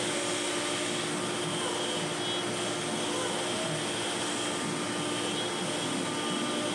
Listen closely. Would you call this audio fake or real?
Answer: real